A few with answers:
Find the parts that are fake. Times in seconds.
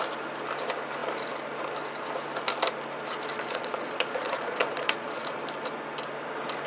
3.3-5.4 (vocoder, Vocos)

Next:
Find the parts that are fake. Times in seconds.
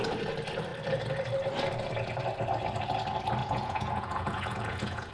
3.4-5.1 (vocoder, Vocos)